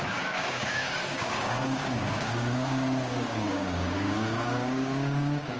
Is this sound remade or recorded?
remade